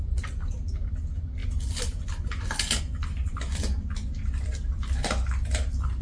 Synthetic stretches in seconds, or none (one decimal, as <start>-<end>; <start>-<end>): none